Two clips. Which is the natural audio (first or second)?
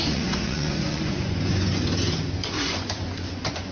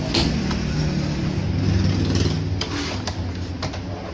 second